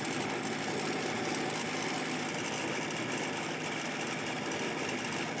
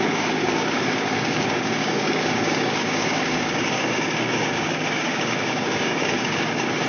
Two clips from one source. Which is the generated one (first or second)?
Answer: second